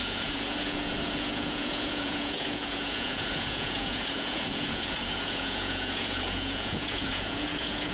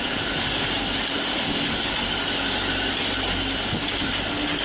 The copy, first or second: first